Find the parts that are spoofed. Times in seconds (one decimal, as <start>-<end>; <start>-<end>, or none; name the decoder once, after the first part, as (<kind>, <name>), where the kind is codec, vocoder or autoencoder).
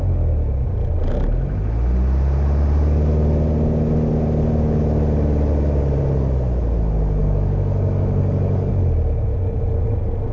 7.2-8.7 (codec, DAC)